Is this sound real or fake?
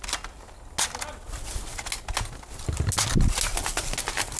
real